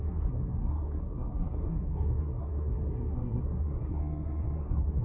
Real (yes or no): no